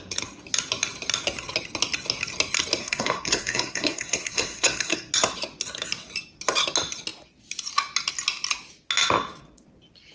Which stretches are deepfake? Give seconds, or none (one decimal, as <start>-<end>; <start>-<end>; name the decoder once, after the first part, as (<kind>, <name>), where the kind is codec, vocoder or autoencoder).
2.8-5.1 (codec, SNAC)